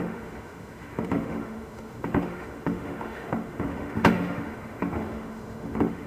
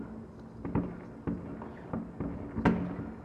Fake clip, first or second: first